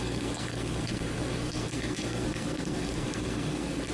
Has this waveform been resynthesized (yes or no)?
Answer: yes